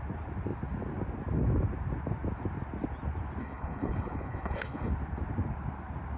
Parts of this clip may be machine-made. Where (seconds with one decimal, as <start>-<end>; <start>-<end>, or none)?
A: 3.4-4.9